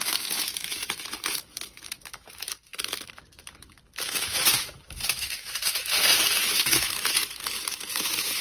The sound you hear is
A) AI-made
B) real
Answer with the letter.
A